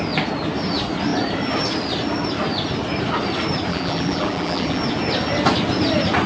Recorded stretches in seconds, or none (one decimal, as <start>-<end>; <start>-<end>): 0.0-3.7; 4.8-6.3